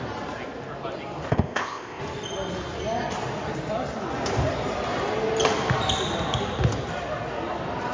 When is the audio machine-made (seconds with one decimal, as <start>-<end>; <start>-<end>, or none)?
1.3-2.0